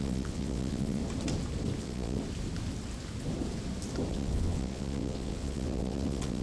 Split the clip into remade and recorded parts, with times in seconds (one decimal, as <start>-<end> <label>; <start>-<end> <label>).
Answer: 0.0-1.0 remade; 1.0-1.8 recorded; 1.8-2.2 remade; 2.2-4.1 recorded; 4.1-6.4 remade